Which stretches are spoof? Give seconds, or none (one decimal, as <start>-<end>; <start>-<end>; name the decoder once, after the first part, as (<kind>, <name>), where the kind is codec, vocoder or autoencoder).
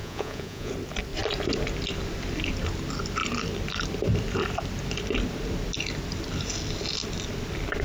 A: 0.0-0.7 (vocoder, Vocos)